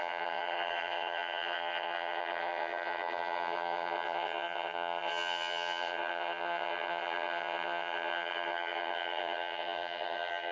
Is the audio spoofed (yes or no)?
yes